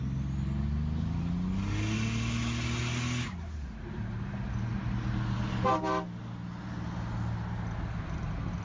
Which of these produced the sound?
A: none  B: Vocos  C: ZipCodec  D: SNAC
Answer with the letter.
A